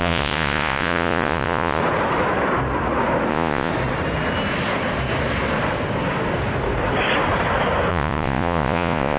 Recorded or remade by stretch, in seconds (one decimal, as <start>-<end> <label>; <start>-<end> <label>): 0.0-1.8 remade; 1.8-3.3 recorded; 3.3-3.7 remade; 3.7-7.9 recorded; 7.9-9.2 remade